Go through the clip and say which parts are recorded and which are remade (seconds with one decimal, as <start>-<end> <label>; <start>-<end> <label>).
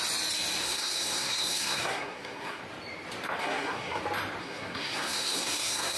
0.0-0.6 recorded; 0.6-2.6 remade; 2.6-3.4 recorded; 3.4-4.0 remade; 4.0-4.4 recorded; 4.4-6.0 remade